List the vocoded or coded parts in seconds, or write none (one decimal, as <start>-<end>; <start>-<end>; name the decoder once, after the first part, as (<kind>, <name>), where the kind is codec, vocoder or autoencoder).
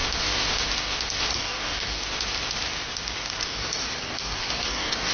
1.3-2.0 (codec, DAC); 3.4-5.1